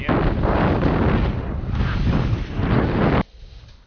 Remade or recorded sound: recorded